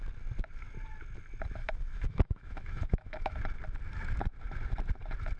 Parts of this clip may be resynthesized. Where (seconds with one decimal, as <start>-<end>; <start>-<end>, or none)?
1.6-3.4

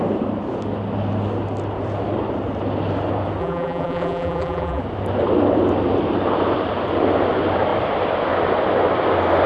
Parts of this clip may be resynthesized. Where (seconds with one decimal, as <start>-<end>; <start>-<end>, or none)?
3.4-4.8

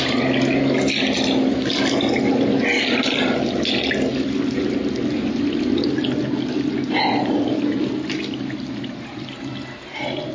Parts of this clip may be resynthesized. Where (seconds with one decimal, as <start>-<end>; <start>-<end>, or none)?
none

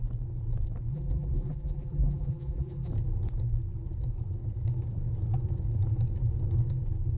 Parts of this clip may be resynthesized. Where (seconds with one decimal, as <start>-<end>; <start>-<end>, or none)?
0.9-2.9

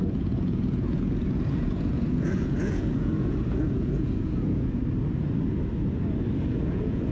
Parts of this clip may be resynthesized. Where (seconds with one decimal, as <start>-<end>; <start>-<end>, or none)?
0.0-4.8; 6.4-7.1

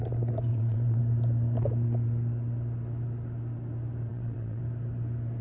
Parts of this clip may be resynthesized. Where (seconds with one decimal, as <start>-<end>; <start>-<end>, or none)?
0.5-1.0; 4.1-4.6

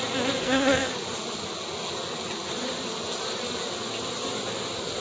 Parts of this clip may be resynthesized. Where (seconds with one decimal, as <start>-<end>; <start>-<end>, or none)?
0.4-0.9

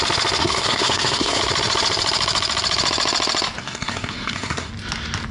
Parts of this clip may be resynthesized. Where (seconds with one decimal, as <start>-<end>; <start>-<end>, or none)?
0.4-1.4; 3.6-4.7